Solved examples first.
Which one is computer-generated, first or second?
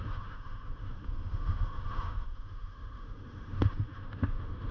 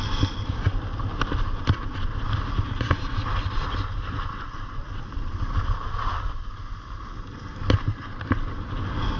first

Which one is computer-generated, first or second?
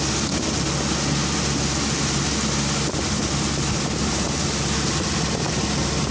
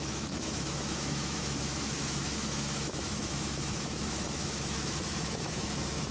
second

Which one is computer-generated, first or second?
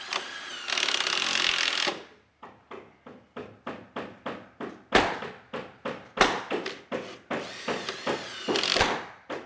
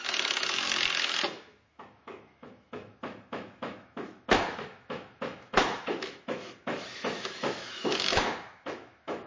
second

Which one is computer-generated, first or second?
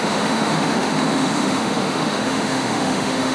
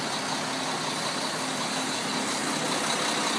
first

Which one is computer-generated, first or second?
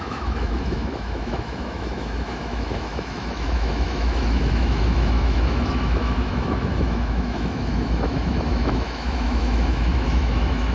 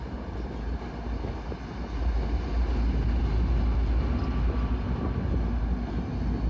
first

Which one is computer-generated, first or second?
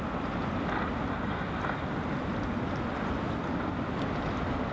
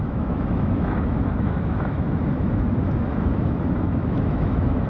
second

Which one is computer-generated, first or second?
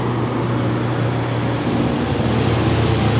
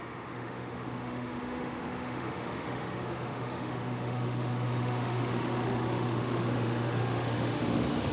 second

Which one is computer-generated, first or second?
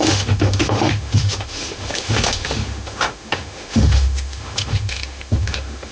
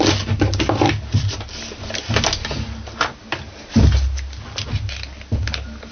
first